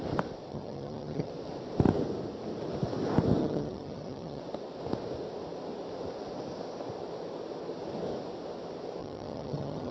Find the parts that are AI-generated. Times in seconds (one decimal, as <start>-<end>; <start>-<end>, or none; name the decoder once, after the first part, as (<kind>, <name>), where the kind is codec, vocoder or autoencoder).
0.5-1.3 (vocoder, HiFi-GAN); 3.4-4.4; 9.0-9.9